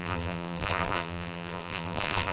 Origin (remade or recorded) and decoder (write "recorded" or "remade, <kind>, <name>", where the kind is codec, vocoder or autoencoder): remade, vocoder, BigVGAN v2